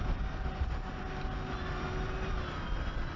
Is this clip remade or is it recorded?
recorded